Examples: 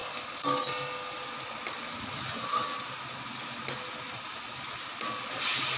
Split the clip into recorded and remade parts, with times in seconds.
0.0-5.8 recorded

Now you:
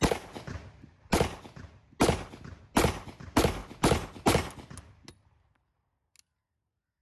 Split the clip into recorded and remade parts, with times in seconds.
0.0-7.0 recorded

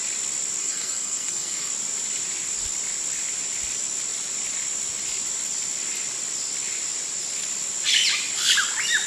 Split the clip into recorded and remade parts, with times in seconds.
0.0-0.6 recorded; 0.6-1.7 remade; 1.7-9.1 recorded

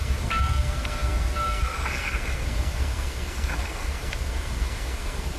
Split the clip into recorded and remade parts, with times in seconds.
0.0-5.4 remade

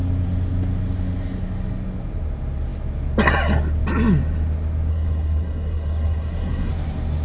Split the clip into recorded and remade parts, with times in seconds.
0.0-4.9 recorded; 4.9-6.7 remade; 6.7-7.2 recorded